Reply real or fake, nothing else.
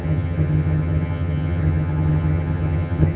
fake